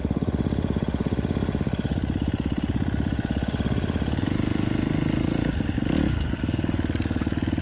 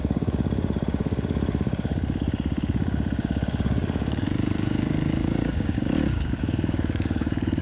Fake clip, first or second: second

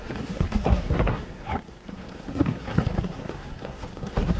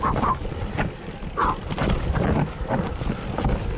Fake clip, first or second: first